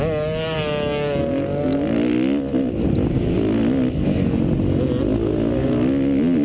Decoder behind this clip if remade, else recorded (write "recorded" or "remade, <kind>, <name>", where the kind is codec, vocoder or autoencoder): recorded